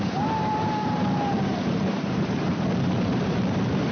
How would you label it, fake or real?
fake